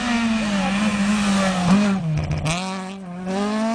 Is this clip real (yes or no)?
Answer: yes